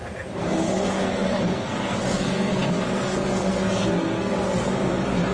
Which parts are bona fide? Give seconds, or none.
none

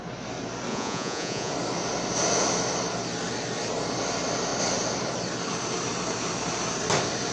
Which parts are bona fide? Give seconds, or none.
0.0-0.7; 1.5-7.3

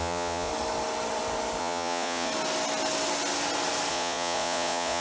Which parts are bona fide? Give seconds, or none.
0.5-1.6; 2.3-3.9